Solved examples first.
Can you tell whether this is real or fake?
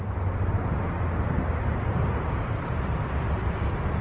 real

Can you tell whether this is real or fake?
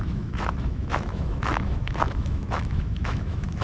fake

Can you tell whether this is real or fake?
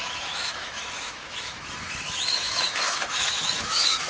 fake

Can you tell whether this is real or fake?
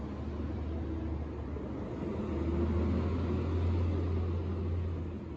real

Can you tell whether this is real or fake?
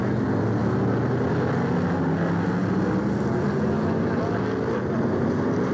real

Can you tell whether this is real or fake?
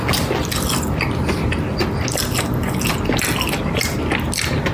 real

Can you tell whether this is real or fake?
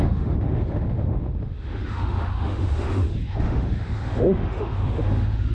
fake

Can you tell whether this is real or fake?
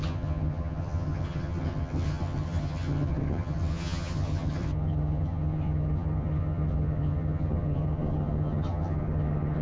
fake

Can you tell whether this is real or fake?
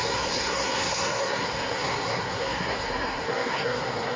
fake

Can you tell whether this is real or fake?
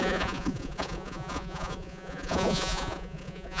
fake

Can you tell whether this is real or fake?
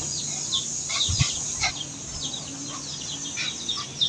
real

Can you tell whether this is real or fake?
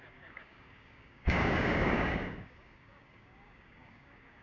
fake